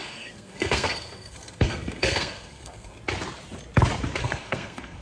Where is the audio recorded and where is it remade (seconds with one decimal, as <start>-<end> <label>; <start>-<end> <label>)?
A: 0.0-3.0 remade; 3.0-4.2 recorded; 4.2-5.0 remade